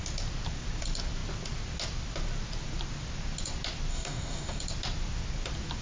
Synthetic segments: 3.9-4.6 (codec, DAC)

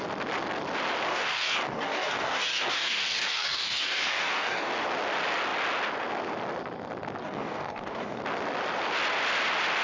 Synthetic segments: 1.1-4.7 (codec, DAC); 7.2-8.2